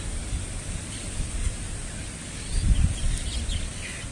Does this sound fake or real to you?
real